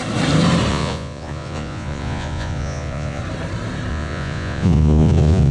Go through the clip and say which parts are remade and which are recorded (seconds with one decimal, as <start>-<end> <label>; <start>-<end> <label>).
0.0-0.7 recorded; 0.7-3.2 remade; 3.2-3.9 recorded; 3.9-5.5 remade